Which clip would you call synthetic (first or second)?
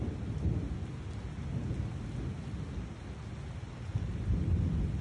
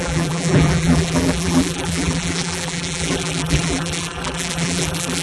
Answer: second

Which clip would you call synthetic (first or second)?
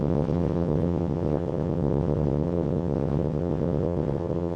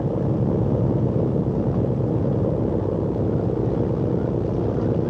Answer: first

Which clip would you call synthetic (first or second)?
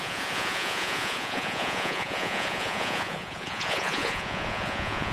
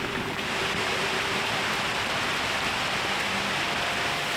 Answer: first